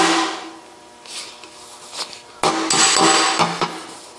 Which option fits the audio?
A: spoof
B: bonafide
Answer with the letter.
B